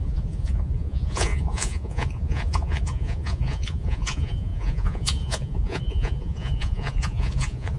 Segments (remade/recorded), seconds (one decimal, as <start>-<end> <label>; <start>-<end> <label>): 0.0-7.8 remade